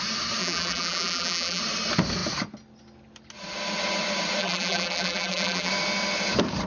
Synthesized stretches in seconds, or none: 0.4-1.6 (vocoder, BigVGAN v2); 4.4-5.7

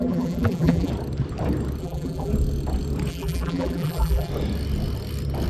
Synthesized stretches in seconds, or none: 0.0-0.9 (vocoder, BigVGAN v2); 1.8-2.3; 3.1-4.3

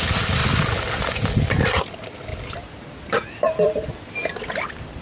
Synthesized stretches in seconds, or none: 2.3-4.4 (vocoder, BigVGAN v2)

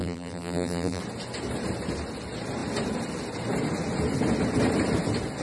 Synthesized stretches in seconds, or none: 0.0-1.0 (vocoder, BigVGAN v2)

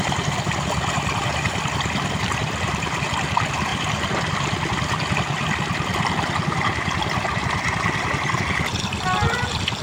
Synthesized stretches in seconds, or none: 3.7-8.4 (vocoder, BigVGAN v2)

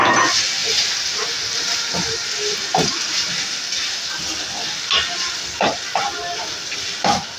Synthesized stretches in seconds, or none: 0.6-1.9 (vocoder, BigVGAN v2); 2.7-3.4

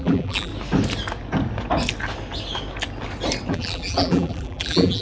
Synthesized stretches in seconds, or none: 0.0-0.5 (vocoder, BigVGAN v2); 3.5-5.0

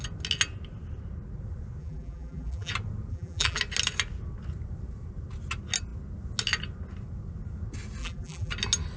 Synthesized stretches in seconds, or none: 1.8-2.7 (vocoder, BigVGAN v2); 3.1-3.6; 8.0-8.5